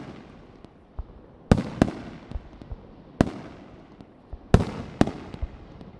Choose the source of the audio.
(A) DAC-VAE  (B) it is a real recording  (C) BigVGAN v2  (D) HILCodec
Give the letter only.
B